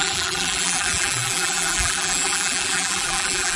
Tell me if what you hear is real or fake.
fake